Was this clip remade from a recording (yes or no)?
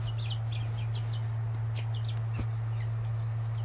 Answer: no